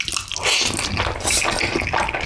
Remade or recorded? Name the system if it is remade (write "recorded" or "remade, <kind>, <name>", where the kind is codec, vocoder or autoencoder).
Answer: recorded